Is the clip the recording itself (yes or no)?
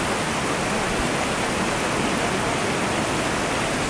yes